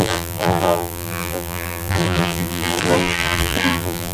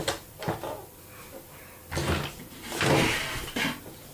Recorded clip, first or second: second